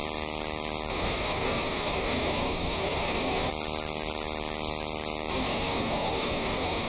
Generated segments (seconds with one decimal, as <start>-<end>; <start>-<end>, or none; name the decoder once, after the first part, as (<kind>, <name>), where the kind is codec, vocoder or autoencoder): 0.9-3.5 (codec, DAC); 5.3-6.9